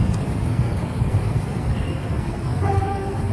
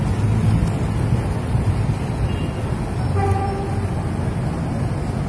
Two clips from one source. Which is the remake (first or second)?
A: first